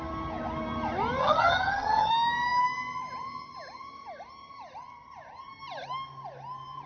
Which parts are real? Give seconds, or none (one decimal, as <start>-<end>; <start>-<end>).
0.0-1.2; 2.1-6.9